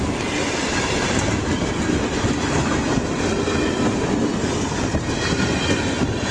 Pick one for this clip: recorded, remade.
recorded